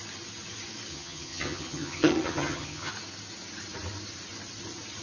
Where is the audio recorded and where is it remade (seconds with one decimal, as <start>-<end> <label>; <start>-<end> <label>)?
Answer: 0.0-0.9 recorded; 0.9-2.9 remade; 2.9-5.0 recorded